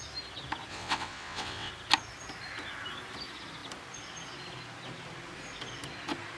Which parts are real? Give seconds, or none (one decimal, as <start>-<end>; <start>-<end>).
0.0-0.7; 1.7-6.4